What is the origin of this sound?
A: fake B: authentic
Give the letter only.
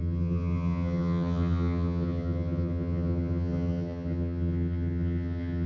A